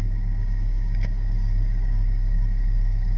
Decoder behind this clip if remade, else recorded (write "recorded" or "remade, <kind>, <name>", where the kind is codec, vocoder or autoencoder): remade, codec, DAC